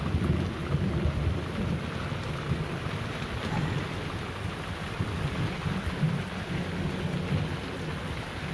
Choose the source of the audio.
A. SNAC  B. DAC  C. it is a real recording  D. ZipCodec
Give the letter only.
C